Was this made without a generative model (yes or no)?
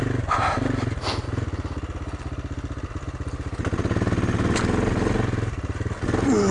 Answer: yes